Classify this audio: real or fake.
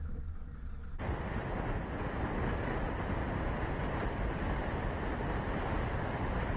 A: real